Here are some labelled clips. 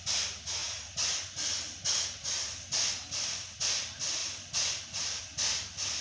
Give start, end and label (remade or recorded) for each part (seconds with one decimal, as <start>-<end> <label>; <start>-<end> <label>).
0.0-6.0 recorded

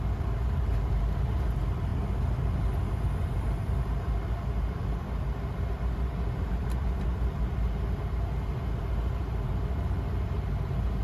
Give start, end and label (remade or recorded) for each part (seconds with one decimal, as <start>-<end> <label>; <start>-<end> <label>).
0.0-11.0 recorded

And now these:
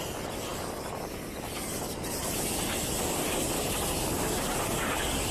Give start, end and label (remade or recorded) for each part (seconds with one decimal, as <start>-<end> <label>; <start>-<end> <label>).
0.0-5.3 recorded

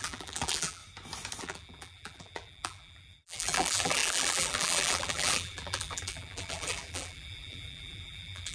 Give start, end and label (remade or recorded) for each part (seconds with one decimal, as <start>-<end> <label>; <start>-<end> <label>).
0.0-0.8 remade; 0.8-1.4 recorded; 1.4-8.5 remade